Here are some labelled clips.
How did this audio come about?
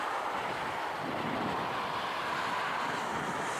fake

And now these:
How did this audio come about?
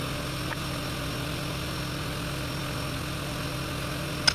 real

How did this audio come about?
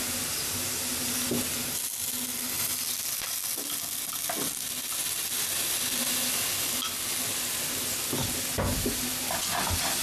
real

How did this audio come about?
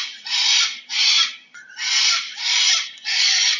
fake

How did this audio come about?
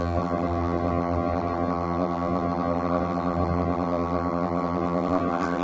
fake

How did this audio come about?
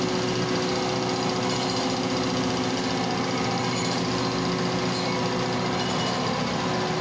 real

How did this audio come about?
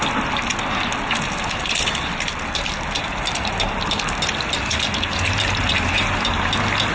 real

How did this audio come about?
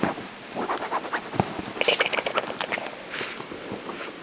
real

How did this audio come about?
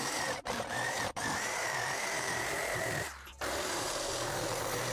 fake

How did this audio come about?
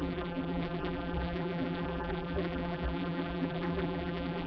fake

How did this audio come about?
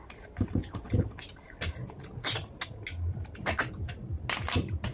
real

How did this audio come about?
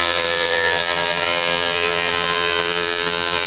fake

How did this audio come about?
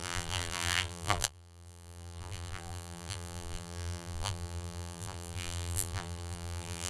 fake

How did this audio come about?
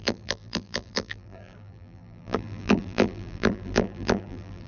fake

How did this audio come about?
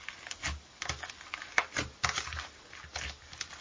real